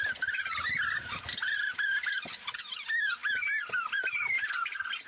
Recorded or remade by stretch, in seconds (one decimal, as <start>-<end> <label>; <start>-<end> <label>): 0.0-5.1 recorded